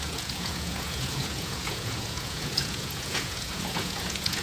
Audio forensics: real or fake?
fake